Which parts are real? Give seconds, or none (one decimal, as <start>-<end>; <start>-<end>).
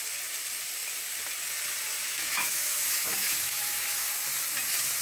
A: 0.0-2.0; 4.1-5.0